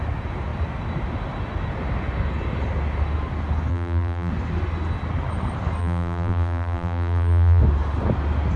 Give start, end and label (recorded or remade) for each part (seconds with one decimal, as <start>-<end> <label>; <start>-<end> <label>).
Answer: 0.0-3.7 recorded; 3.7-4.3 remade; 4.3-5.8 recorded; 5.8-7.6 remade; 7.6-8.6 recorded